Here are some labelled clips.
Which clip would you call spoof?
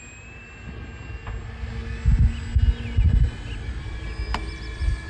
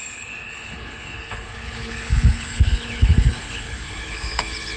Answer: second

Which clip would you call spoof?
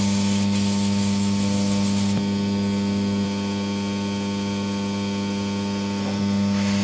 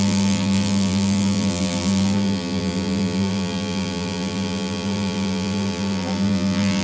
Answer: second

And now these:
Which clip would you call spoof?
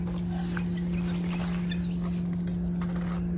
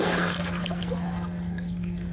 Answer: second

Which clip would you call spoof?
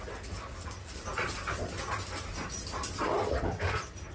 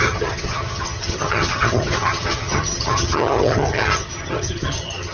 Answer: second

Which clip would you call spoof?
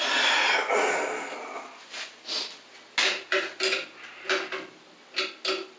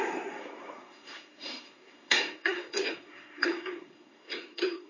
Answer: second